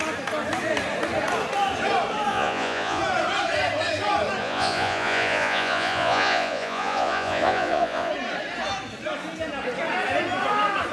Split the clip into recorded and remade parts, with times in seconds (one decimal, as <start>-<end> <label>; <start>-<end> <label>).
0.0-2.3 recorded; 2.3-3.0 remade; 3.0-4.4 recorded; 4.4-8.1 remade; 8.1-10.9 recorded